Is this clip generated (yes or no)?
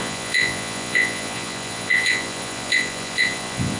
yes